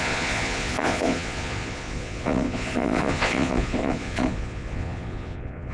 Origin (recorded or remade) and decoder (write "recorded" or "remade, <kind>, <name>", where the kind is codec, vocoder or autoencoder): remade, vocoder, Vocos